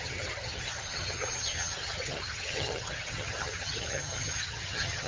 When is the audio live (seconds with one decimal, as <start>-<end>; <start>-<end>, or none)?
none